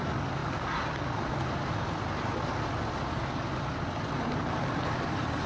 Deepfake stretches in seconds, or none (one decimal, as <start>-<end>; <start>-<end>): none